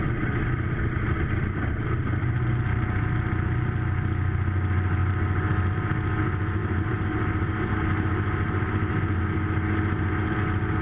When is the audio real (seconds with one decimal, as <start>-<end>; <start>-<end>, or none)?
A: 0.0-6.6; 9.2-10.8